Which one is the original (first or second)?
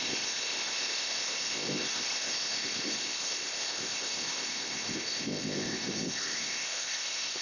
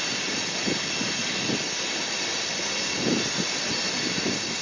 second